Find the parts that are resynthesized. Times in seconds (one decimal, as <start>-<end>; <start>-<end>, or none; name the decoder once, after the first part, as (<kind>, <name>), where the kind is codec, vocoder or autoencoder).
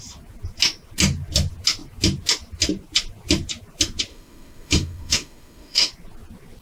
4.1-5.9 (autoencoder, DAC-VAE)